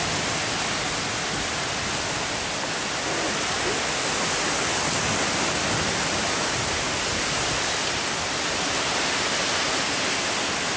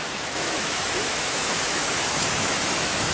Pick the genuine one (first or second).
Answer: first